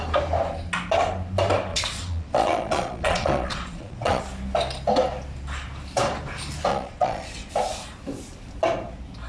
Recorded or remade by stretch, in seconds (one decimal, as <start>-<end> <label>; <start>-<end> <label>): 0.0-1.7 recorded; 1.7-4.2 remade; 4.2-6.7 recorded; 6.7-7.5 remade; 7.5-9.3 recorded